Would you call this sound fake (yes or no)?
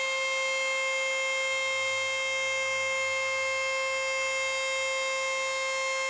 no